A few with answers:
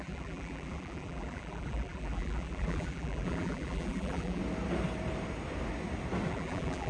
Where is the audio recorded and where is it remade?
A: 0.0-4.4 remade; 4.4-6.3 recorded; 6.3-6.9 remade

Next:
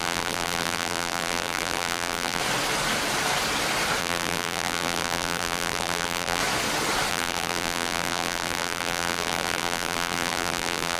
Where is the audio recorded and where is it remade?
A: 0.0-2.4 remade; 2.4-4.0 recorded; 4.0-6.4 remade; 6.4-7.1 recorded; 7.1-11.0 remade

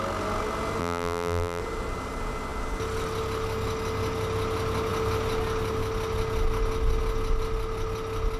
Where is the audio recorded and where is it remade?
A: 0.0-0.8 recorded; 0.8-1.6 remade; 1.6-8.4 recorded

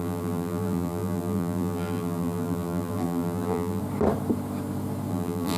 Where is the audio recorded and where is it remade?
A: 0.0-3.8 remade; 3.8-5.1 recorded; 5.1-5.6 remade

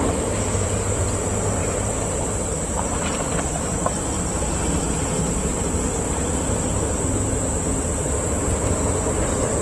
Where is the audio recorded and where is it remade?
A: 0.0-1.6 recorded; 1.6-4.6 remade; 4.6-9.6 recorded

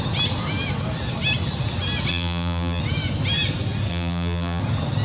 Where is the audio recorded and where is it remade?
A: 0.0-2.1 recorded; 2.1-2.8 remade; 2.8-3.9 recorded; 3.9-4.6 remade; 4.6-5.0 recorded

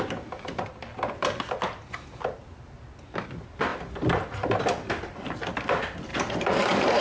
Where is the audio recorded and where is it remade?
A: 0.0-6.1 recorded; 6.1-7.0 remade